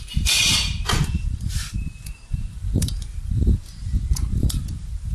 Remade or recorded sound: remade